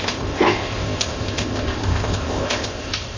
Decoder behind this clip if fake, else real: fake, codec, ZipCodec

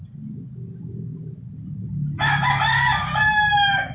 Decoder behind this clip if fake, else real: real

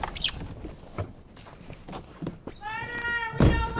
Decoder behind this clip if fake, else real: real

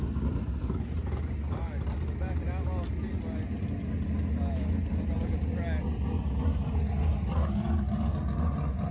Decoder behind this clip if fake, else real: real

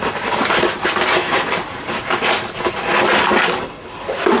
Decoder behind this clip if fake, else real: real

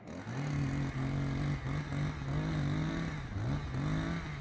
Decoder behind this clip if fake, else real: real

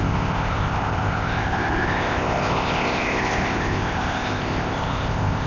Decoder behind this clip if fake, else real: fake, codec, ZipCodec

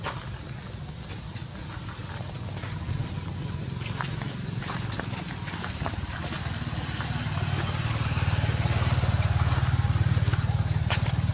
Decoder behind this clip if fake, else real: real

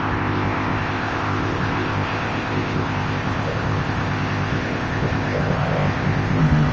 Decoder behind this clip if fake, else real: fake, codec, ZipCodec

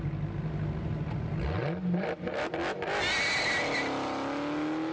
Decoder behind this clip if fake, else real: real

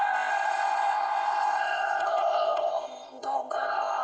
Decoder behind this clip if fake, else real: fake, codec, ZipCodec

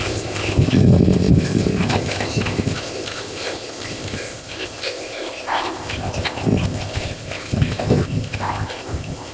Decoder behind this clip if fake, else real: fake, codec, ZipCodec